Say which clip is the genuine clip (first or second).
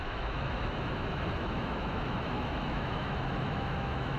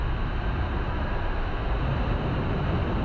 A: second